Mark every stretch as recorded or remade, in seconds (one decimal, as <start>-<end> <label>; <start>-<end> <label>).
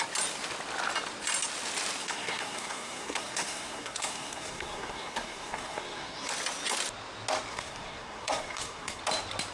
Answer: 0.0-2.0 recorded; 2.0-6.3 remade; 6.3-7.5 recorded; 7.5-9.0 remade; 9.0-9.5 recorded